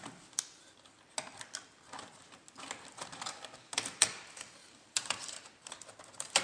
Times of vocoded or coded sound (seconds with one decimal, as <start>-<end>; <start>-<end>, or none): 4.6-5.7